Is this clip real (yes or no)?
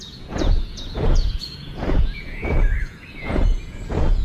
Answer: no